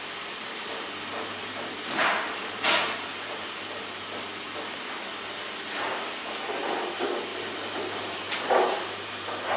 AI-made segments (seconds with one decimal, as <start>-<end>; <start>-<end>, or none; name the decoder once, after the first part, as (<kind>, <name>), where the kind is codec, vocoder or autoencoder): 0.4-2.7 (vocoder, BigVGAN v2); 7.3-9.6